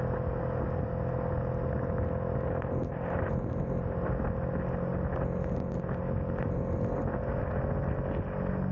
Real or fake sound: real